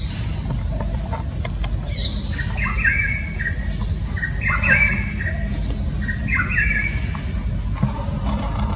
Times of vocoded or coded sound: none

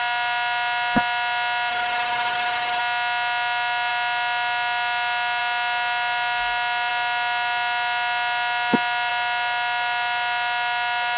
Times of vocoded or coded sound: 1.7-2.8 (codec, HILCodec)

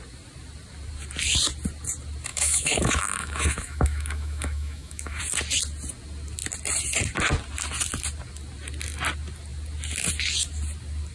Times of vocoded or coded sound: 2.3-5.2 (autoencoder, DAC-VAE)

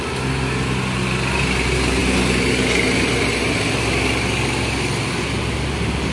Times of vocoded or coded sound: none

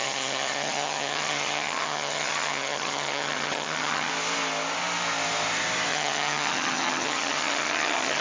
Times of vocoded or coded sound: 0.0-4.1 (vocoder, HiFi-GAN); 5.9-8.2